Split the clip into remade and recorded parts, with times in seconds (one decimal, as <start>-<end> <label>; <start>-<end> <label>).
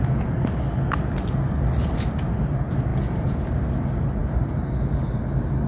0.0-2.9 recorded; 2.9-3.4 remade; 3.4-5.7 recorded